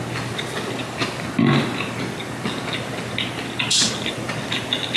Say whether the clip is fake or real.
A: real